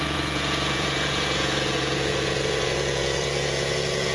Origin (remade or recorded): remade